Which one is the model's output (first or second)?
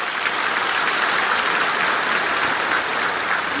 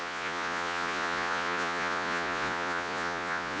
second